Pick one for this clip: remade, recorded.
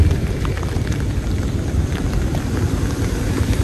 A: remade